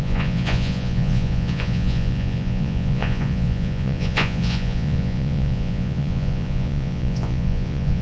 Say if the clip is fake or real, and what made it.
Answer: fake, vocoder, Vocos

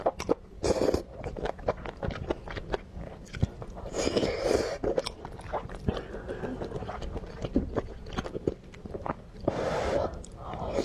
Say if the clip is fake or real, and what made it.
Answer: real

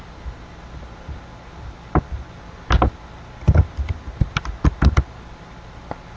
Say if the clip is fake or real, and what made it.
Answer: real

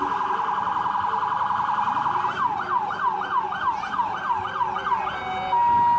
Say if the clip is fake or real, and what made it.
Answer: real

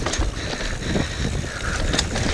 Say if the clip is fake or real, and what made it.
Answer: real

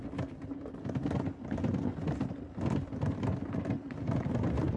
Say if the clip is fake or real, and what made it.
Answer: real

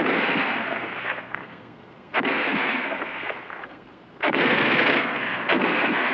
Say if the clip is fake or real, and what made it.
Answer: fake, codec, SNAC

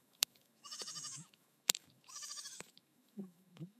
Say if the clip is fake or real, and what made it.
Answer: fake, autoencoder, DAC-VAE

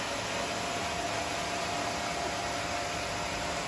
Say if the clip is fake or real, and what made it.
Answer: real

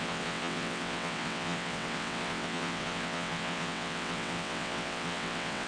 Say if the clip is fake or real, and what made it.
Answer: fake, vocoder, WaveNeXt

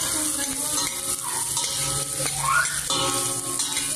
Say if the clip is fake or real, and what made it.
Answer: real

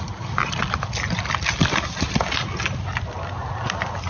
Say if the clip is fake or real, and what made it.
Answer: real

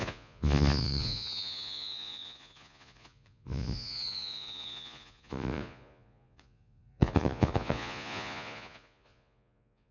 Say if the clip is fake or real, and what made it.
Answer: fake, vocoder, Vocos